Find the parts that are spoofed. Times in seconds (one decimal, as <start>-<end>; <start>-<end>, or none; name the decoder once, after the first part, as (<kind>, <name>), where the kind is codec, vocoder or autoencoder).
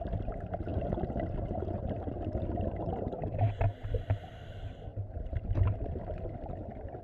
none